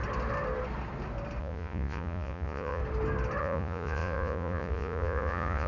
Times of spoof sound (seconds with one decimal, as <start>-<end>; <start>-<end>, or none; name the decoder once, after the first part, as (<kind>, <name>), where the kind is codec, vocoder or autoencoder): 1.4-2.8 (vocoder, Vocos); 3.4-5.7